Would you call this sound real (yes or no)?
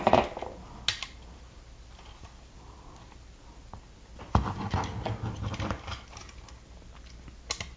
yes